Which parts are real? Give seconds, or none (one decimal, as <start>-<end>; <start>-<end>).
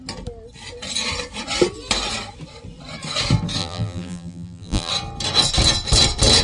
0.0-3.6; 4.9-6.4